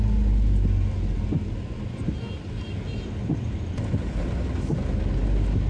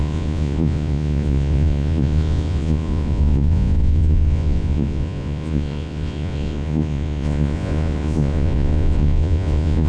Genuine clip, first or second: first